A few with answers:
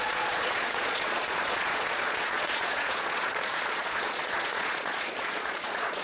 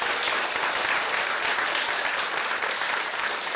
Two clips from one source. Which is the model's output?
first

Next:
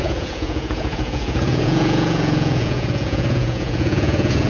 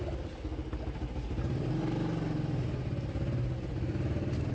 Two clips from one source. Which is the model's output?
first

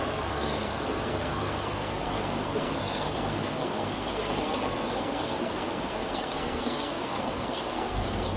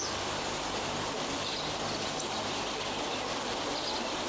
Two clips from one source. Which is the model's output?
first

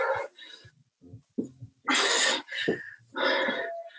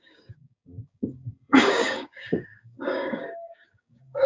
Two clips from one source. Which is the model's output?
second